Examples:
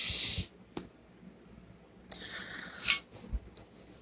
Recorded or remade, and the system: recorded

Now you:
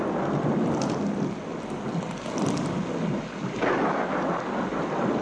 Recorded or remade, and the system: recorded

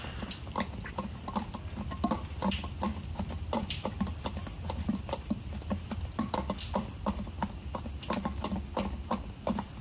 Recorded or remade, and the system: recorded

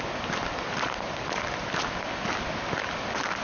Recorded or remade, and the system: recorded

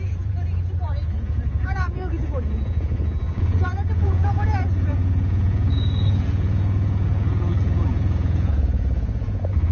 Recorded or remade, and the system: remade, vocoder, Vocos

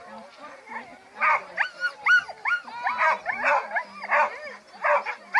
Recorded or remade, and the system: recorded